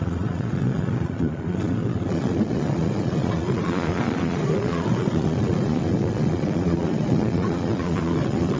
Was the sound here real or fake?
fake